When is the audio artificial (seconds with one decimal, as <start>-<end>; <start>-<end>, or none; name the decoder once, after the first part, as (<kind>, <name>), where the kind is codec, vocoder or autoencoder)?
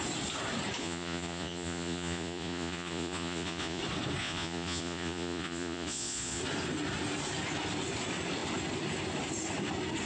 0.8-3.8 (vocoder, Vocos); 4.2-6.4